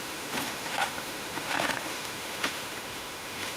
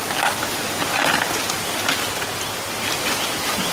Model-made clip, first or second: first